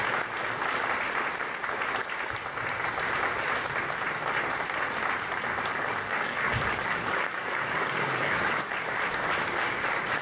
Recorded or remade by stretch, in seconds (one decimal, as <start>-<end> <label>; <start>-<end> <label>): 0.0-5.7 recorded; 5.7-8.7 remade; 8.7-10.2 recorded